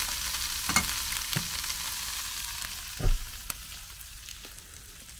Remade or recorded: recorded